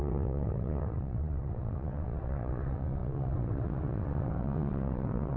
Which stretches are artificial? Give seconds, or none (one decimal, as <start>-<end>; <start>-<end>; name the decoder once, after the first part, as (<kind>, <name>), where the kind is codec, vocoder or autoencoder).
0.0-5.4 (vocoder, WaveNeXt)